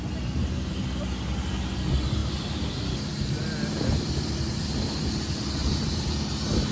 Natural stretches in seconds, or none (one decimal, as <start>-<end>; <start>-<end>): 0.0-5.6; 6.3-6.7